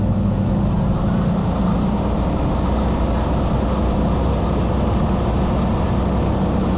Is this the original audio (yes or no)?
yes